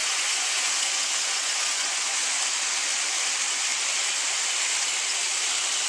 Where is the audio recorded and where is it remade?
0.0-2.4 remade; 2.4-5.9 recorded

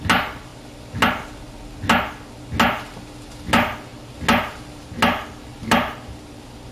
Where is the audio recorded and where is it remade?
0.0-6.7 recorded

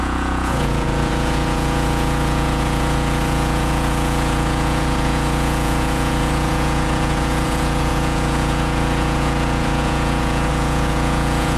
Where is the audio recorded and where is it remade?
0.0-11.6 remade

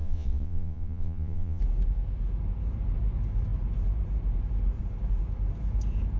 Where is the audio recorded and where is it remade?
0.0-1.6 remade; 1.6-6.2 recorded

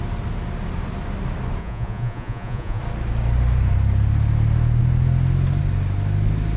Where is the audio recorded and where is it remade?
0.0-1.6 recorded; 1.6-2.8 remade; 2.8-6.6 recorded